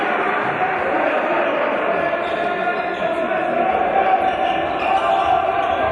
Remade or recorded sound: recorded